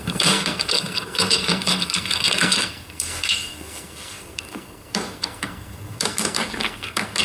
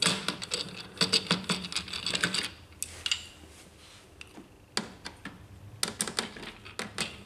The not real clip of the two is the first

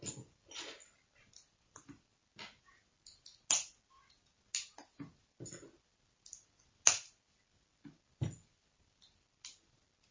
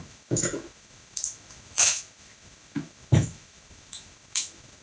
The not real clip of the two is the second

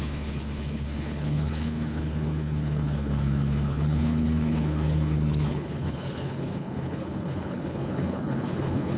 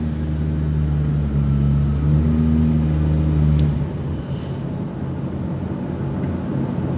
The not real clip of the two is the first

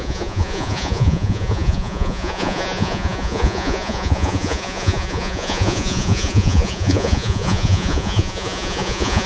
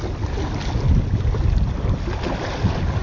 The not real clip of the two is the first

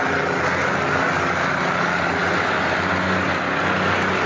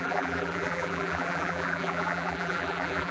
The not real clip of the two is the second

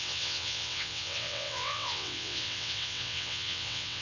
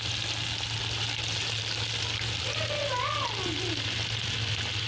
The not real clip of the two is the first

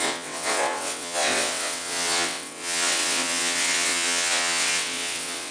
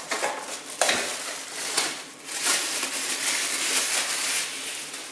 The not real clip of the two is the first